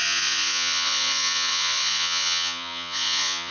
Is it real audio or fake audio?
fake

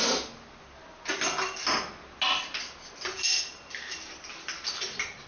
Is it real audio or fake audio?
real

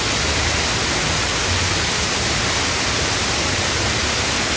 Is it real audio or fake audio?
real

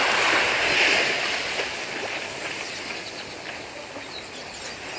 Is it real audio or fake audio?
real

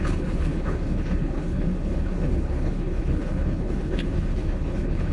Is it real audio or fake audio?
fake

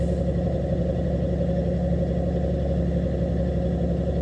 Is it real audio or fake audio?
real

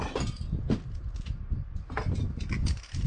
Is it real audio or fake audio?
real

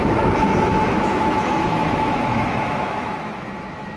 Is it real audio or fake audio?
fake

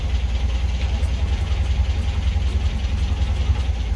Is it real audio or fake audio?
real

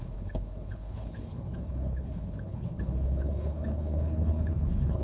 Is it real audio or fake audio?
fake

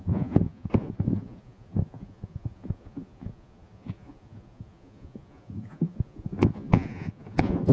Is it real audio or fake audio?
fake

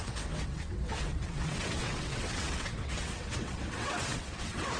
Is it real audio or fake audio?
fake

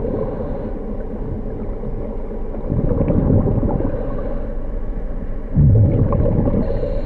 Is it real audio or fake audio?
real